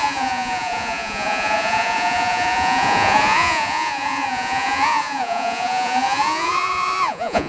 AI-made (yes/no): yes